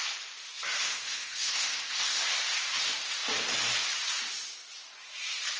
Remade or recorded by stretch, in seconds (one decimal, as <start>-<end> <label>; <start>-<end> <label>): 0.0-0.8 recorded; 0.8-2.2 remade; 2.2-5.6 recorded